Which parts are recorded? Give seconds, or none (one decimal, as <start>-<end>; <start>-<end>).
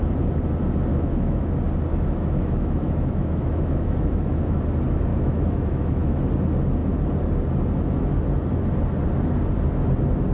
0.0-0.9; 1.5-1.9; 4.6-5.1; 6.2-10.3